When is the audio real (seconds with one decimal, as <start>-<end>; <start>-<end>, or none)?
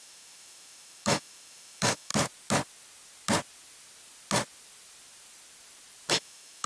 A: 2.1-6.1